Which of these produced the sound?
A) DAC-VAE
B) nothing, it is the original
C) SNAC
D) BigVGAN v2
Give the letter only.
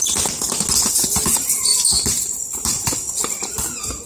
B